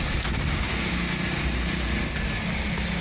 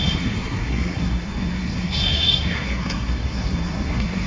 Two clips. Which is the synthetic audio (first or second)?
second